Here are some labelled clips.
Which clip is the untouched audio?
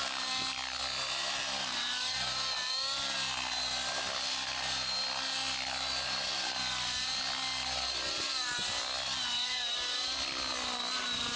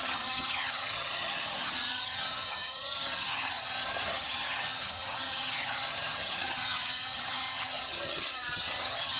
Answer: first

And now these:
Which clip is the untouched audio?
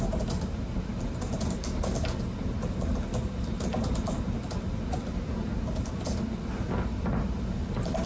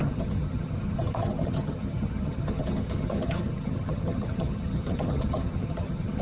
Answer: first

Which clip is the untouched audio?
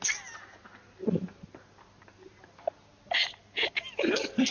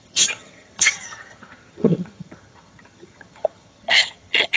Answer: first